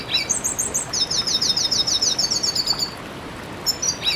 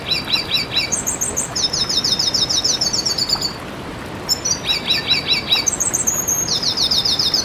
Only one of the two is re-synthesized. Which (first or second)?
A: second